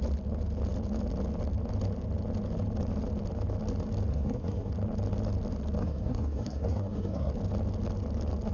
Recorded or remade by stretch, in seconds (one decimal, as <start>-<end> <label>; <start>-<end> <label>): 0.0-4.1 recorded; 4.1-4.7 remade; 4.7-5.8 recorded; 5.8-7.3 remade; 7.3-8.5 recorded